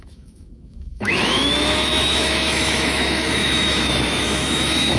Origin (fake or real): fake